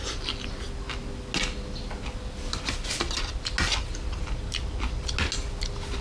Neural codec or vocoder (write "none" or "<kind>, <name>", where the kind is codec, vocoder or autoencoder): none